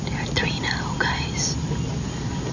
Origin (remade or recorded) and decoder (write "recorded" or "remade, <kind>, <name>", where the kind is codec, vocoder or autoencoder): recorded